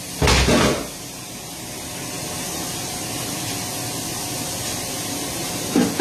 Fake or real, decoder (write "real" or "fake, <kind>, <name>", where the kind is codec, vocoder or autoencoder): real